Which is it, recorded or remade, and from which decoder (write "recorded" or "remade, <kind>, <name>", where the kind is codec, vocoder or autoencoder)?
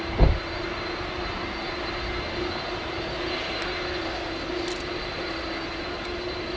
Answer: recorded